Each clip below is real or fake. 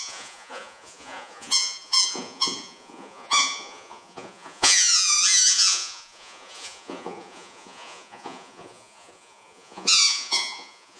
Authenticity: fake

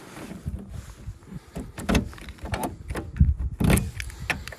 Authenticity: real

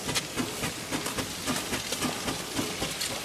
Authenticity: real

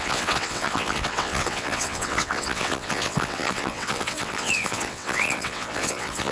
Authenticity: fake